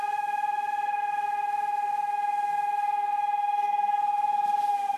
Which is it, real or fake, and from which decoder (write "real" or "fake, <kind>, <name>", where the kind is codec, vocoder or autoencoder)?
fake, codec, SNAC